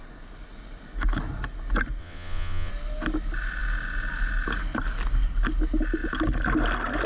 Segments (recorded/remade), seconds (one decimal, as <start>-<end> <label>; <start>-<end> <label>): 0.0-2.0 recorded; 2.0-2.7 remade; 2.7-7.1 recorded